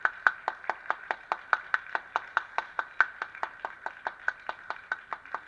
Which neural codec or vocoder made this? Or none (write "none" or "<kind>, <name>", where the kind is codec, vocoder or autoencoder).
none